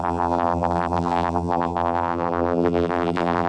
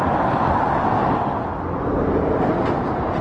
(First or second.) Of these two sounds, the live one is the second